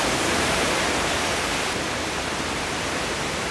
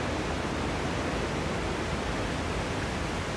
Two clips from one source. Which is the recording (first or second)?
second